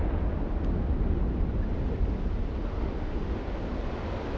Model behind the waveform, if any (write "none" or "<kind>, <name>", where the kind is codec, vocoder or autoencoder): none